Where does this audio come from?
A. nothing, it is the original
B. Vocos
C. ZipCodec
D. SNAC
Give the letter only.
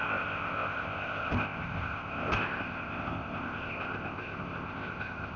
C